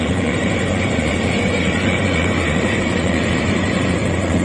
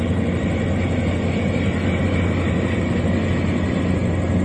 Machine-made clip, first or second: first